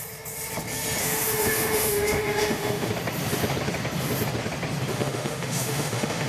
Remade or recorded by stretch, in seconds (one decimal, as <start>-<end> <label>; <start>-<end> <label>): 0.0-1.0 recorded; 1.0-2.9 remade; 2.9-4.9 recorded; 4.9-6.3 remade

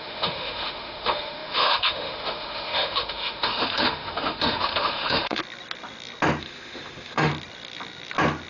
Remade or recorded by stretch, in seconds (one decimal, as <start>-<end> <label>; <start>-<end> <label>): 0.0-5.4 remade; 5.4-6.4 recorded; 6.4-7.3 remade; 7.3-8.5 recorded

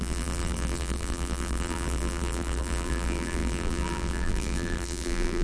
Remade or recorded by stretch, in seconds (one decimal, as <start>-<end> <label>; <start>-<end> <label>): 0.0-5.4 remade

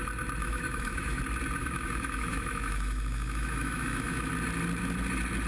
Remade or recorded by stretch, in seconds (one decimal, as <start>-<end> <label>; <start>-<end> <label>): 0.0-0.4 recorded; 0.4-1.2 remade; 1.2-1.6 recorded; 1.6-4.3 remade; 4.3-5.5 recorded

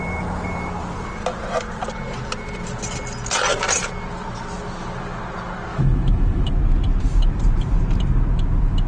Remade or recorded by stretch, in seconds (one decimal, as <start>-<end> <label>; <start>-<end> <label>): 0.0-5.7 recorded; 5.7-6.5 remade; 6.5-8.9 recorded

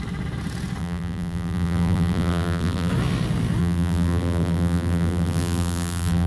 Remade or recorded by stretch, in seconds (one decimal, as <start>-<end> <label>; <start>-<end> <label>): 0.0-0.8 recorded; 0.8-2.9 remade; 2.9-3.6 recorded; 3.6-6.3 remade